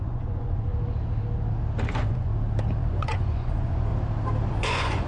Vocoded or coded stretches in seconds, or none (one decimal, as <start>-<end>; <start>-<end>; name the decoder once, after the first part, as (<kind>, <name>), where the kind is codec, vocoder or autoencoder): 0.0-0.7 (vocoder, Vocos); 1.9-2.3; 2.8-3.9; 4.5-5.1